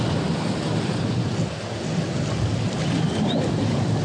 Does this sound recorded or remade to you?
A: recorded